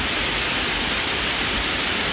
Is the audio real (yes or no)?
yes